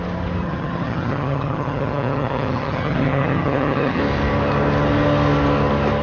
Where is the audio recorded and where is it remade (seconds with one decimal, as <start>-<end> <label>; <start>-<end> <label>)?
0.0-0.4 recorded; 0.4-4.0 remade; 4.0-6.0 recorded